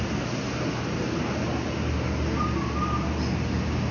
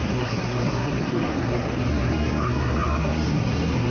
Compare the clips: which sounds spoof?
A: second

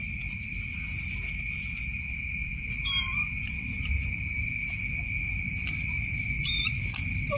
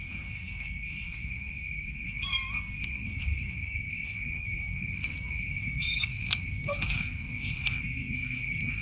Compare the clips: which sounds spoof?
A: second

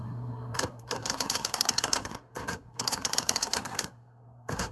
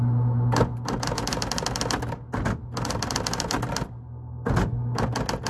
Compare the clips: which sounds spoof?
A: first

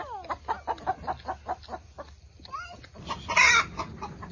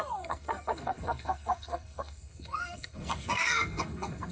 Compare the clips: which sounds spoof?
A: second